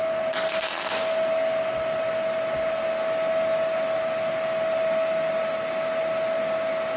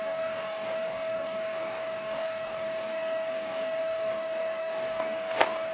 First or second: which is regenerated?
second